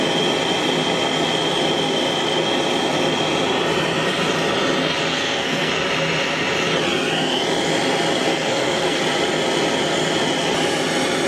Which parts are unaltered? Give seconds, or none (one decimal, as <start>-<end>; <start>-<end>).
0.0-5.1; 5.7-8.3; 9.0-11.3